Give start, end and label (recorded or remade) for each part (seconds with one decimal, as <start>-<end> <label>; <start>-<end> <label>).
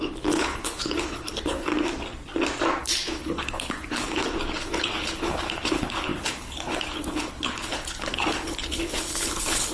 0.0-1.7 remade; 1.7-2.8 recorded; 2.8-9.7 remade